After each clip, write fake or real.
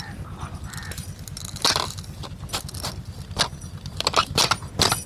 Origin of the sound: real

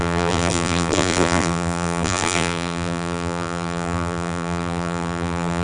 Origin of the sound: fake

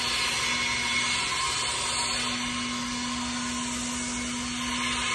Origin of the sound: real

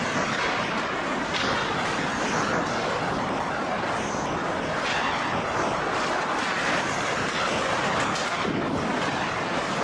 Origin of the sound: real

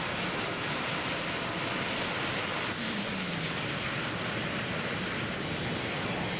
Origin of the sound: real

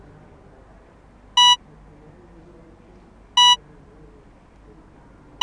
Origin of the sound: real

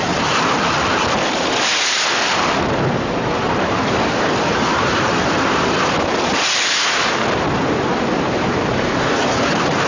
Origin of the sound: fake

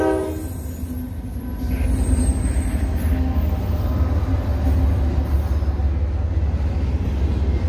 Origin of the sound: real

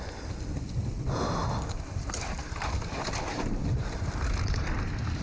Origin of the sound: real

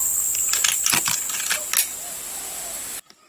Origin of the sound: real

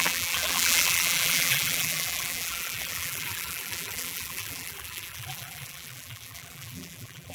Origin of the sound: fake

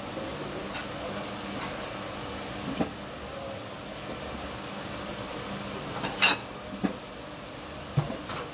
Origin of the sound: real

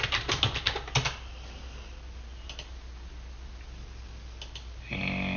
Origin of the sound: real